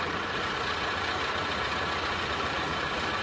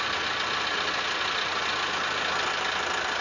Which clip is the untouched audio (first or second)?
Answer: second